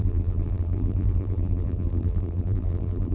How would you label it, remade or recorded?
remade